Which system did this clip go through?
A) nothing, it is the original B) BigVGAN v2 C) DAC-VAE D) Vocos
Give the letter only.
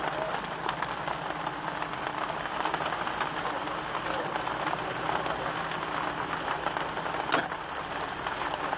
A